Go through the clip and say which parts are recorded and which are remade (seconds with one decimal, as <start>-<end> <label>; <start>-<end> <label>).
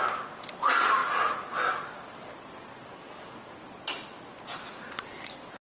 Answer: 0.0-5.6 recorded